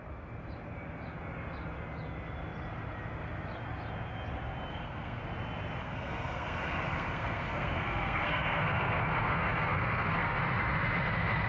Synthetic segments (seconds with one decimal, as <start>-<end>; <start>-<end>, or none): 4.7-5.2; 5.8-10.4